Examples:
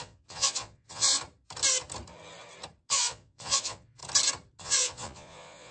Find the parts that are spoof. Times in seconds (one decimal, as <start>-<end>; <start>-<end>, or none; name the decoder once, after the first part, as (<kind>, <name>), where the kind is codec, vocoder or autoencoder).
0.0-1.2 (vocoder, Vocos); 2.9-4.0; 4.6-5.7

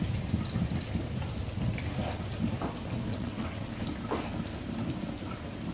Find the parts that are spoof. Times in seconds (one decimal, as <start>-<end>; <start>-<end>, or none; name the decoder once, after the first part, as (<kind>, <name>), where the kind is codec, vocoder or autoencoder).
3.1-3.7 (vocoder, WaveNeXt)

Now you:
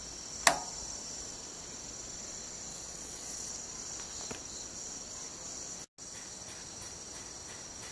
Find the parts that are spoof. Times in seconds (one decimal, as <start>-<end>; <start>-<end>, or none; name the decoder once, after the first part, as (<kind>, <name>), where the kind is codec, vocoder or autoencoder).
2.7-3.5 (vocoder, WaveNeXt)